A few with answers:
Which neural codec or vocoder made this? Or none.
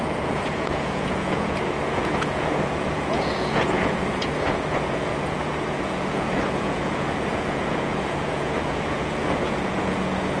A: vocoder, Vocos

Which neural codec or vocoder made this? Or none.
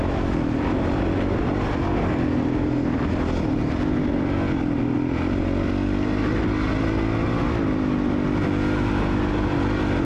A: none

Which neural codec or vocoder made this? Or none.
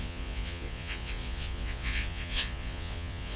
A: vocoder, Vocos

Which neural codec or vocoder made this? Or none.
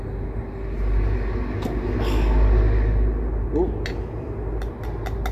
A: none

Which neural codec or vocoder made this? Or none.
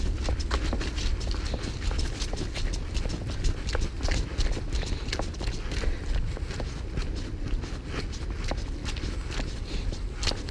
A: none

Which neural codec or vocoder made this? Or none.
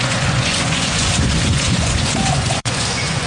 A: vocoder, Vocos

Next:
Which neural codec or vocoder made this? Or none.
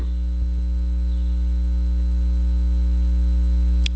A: none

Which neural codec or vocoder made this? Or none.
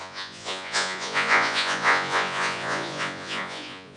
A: vocoder, Vocos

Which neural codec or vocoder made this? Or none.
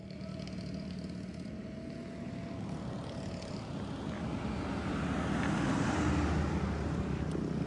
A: none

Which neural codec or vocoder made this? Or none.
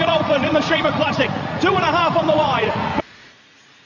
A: vocoder, Vocos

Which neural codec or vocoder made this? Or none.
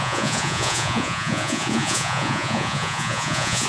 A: vocoder, Vocos